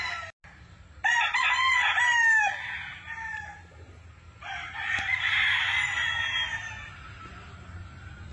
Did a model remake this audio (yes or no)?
no